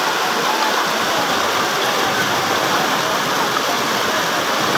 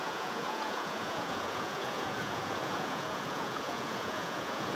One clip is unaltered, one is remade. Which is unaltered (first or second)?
first